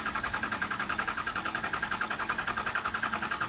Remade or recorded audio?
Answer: remade